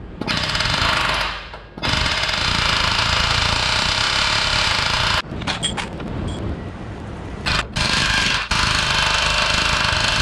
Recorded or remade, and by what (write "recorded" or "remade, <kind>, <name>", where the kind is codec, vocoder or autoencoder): recorded